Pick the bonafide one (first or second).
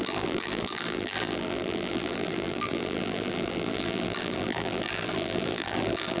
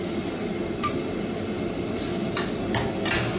second